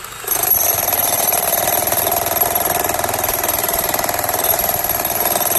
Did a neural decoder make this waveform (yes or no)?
yes